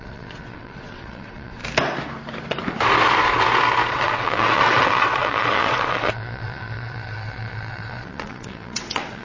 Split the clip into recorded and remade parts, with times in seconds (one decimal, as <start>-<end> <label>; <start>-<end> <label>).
0.0-1.6 remade; 1.6-3.9 recorded; 3.9-9.2 remade